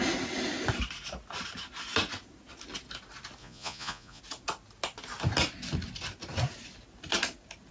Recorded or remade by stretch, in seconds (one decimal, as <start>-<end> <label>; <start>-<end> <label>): 0.0-3.4 recorded; 3.4-4.2 remade; 4.2-7.7 recorded

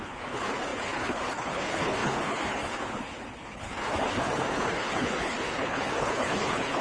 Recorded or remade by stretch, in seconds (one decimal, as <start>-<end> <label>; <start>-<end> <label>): 0.0-6.8 remade

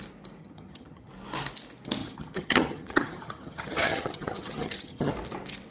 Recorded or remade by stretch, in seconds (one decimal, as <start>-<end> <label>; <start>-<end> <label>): 0.0-0.4 recorded; 0.4-1.1 remade; 1.1-2.0 recorded; 2.0-5.1 remade; 5.1-5.7 recorded

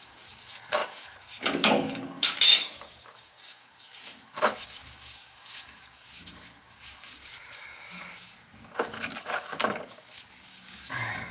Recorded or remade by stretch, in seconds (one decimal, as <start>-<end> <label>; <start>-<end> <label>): 0.0-11.3 remade

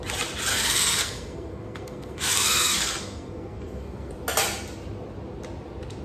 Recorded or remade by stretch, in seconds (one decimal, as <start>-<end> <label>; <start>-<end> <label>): 0.0-0.5 recorded; 0.5-4.1 remade; 4.1-6.0 recorded

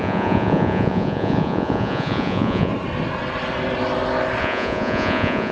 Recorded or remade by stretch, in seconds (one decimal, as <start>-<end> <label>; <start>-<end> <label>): 0.0-2.7 remade; 2.7-4.4 recorded; 4.4-5.5 remade

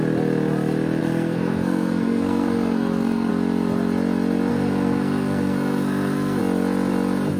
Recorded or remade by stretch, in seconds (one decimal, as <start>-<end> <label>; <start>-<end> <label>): 0.0-1.0 recorded; 1.0-3.3 remade; 3.3-4.5 recorded; 4.5-6.4 remade; 6.4-7.4 recorded

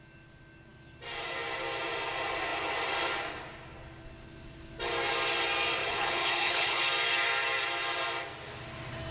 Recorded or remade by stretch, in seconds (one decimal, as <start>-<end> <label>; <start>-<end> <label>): 0.0-5.8 recorded; 5.8-6.8 remade; 6.8-9.1 recorded